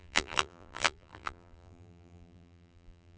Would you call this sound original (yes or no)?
no